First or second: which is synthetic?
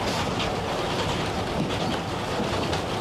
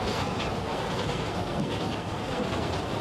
second